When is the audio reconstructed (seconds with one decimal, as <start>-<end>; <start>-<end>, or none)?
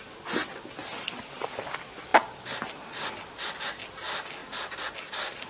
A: none